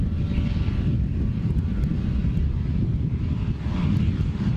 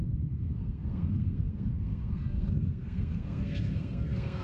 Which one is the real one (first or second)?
first